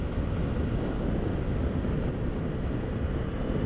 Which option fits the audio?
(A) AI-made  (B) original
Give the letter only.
B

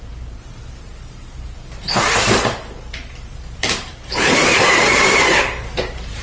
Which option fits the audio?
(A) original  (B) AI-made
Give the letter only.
B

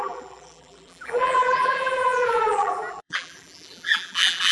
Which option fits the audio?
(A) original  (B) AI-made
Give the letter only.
B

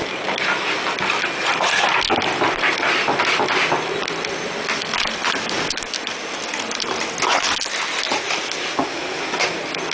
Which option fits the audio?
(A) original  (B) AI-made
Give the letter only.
A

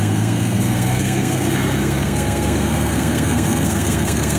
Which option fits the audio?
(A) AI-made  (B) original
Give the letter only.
A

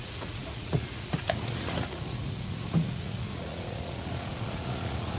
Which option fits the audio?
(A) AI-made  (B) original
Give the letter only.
A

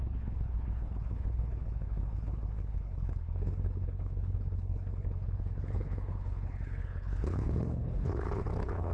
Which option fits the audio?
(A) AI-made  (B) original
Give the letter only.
A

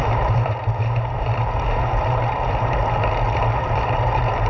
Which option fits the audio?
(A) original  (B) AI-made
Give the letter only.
B